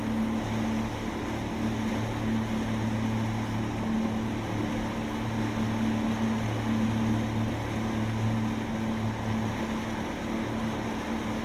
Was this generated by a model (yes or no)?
no